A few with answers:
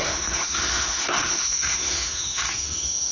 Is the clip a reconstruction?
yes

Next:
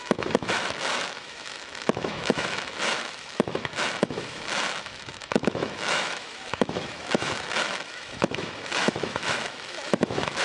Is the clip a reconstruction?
yes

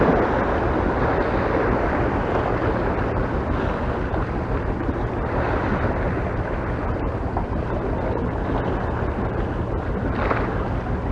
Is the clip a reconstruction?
no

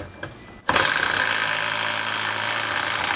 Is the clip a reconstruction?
no